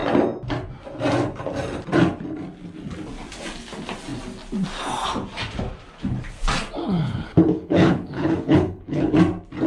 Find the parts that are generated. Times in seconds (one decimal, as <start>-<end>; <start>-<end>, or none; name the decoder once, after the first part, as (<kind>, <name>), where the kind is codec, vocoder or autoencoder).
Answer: 6.8-9.2 (codec, HILCodec)